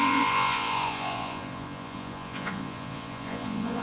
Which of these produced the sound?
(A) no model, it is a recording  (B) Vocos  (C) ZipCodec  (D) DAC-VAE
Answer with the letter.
B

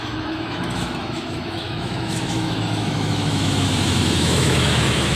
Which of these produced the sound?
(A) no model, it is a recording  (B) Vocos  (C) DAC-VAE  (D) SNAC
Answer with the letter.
C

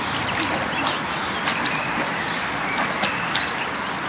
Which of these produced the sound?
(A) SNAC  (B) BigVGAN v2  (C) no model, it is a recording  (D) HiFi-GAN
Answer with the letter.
C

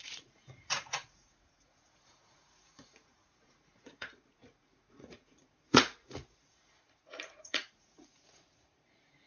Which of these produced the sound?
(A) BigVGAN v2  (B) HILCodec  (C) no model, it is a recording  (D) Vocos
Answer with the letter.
D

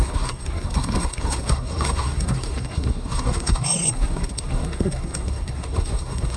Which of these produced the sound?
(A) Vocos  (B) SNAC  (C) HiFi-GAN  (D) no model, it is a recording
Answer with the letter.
B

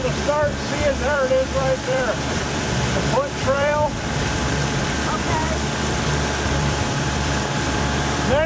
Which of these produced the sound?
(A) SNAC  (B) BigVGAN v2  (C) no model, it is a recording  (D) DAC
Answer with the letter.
B